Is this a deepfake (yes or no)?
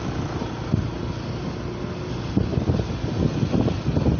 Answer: no